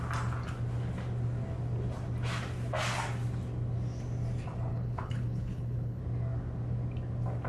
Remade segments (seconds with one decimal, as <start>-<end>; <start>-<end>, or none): 4.7-6.0